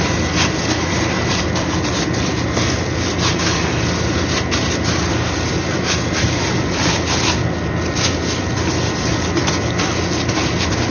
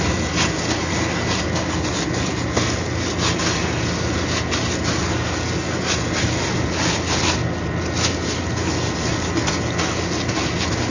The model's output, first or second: first